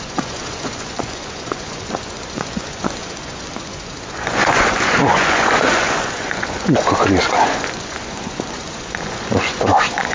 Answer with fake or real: fake